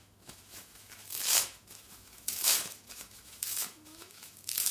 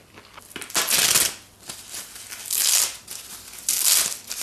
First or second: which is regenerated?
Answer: first